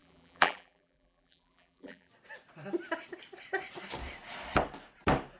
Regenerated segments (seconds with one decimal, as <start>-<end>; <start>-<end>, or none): 0.0-2.1